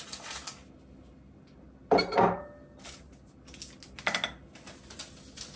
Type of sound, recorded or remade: recorded